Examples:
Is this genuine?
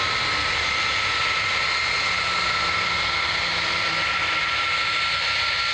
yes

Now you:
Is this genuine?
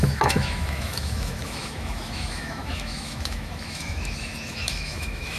no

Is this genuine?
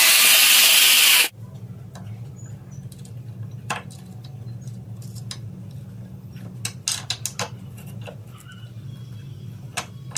yes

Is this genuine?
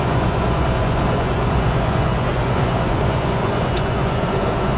no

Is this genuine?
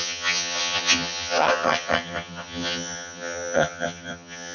no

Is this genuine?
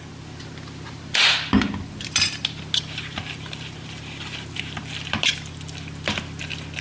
yes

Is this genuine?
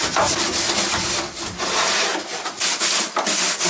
yes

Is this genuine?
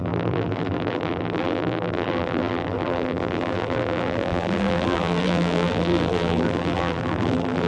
no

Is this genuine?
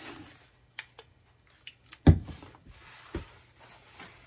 yes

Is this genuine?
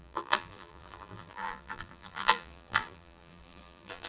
no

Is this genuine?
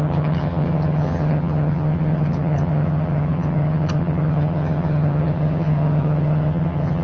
no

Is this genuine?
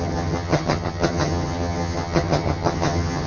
no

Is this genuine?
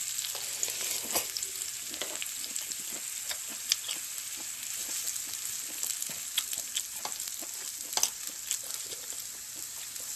yes